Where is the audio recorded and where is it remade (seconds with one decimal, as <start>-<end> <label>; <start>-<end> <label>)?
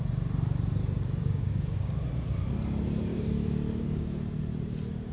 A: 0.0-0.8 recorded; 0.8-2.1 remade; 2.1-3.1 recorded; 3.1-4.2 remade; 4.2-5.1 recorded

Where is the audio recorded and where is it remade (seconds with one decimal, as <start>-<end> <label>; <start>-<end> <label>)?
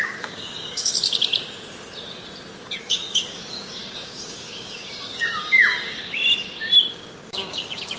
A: 0.0-1.3 remade; 1.3-2.8 recorded; 2.8-6.2 remade; 6.2-6.9 recorded; 6.9-8.0 remade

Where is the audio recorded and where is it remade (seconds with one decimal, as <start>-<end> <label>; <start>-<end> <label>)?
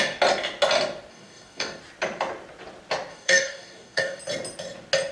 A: 0.0-1.1 recorded; 1.1-1.8 remade; 1.8-3.1 recorded; 3.1-4.2 remade; 4.2-5.1 recorded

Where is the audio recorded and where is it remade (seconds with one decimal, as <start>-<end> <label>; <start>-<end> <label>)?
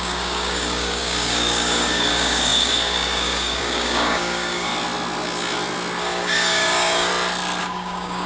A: 0.0-4.7 remade; 4.7-6.0 recorded; 6.0-7.1 remade; 7.1-7.6 recorded; 7.6-8.3 remade